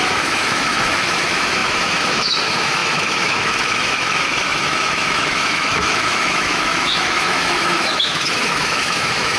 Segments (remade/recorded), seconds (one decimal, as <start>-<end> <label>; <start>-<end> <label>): 0.0-9.4 remade